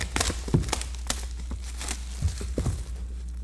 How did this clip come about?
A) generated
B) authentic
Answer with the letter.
B